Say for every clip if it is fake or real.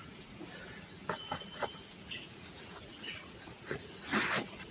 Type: fake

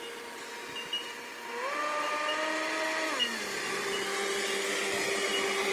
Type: real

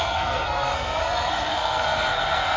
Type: fake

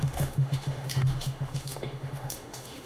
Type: fake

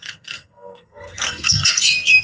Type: fake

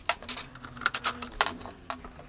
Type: real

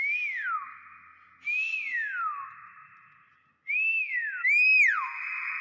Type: real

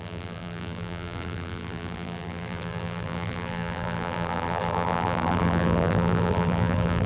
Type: fake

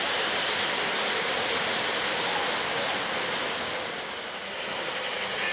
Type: real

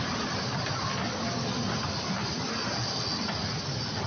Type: real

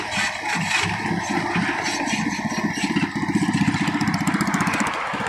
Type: fake